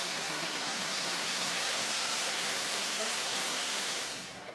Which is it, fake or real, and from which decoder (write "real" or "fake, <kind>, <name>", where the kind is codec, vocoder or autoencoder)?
fake, codec, SNAC